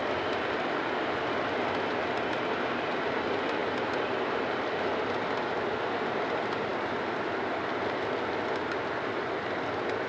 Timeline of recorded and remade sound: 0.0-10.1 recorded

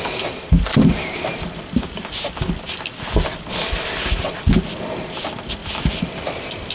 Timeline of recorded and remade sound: 0.0-6.7 recorded

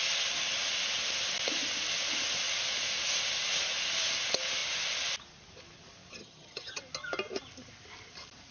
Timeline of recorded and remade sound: 0.0-6.2 recorded; 6.2-6.8 remade; 6.8-8.5 recorded

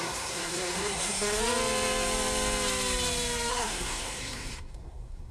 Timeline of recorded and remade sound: 0.0-1.4 remade; 1.4-3.5 recorded; 3.5-5.3 remade